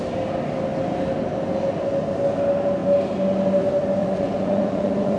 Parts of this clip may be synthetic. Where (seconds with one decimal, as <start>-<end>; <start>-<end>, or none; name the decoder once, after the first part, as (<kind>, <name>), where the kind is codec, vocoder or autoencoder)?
4.0-5.2 (vocoder, Vocos)